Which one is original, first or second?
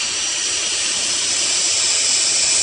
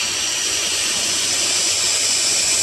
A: first